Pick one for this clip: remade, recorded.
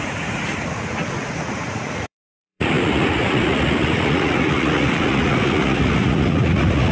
remade